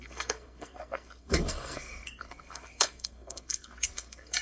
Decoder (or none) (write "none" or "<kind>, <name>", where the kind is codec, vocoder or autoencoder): codec, SNAC